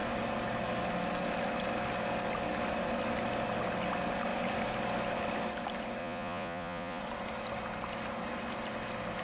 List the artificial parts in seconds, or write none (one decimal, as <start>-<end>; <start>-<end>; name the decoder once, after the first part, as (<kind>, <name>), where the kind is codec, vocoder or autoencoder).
6.0-7.0 (vocoder, Vocos)